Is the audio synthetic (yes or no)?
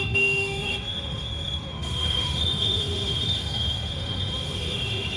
yes